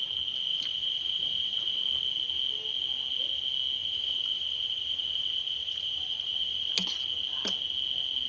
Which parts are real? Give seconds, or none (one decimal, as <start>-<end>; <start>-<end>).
0.0-0.5; 1.8-3.8; 6.7-8.3